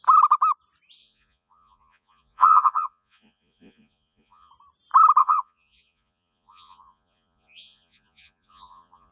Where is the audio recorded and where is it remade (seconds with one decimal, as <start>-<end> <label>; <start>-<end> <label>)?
0.0-1.0 recorded; 1.0-4.5 remade; 4.5-5.2 recorded; 5.2-9.1 remade